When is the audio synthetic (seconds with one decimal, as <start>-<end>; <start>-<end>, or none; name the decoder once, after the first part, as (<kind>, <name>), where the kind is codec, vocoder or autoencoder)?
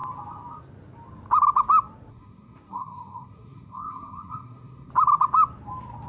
2.1-4.9 (codec, SNAC)